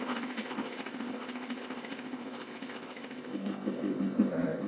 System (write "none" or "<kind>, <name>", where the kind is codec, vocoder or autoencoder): codec, ZipCodec